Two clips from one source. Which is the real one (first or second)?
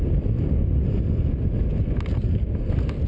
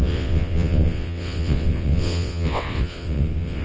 first